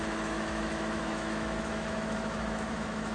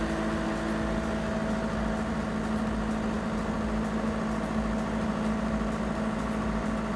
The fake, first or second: first